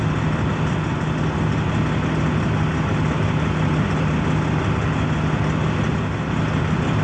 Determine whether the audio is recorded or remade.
recorded